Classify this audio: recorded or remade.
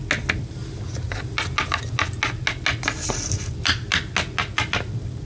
recorded